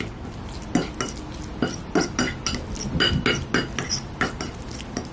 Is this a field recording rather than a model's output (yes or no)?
yes